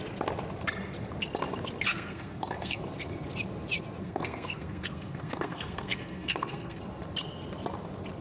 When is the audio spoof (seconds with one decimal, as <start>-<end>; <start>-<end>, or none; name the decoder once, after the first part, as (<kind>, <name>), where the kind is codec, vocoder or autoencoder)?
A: 1.9-2.8 (codec, SNAC); 4.0-6.8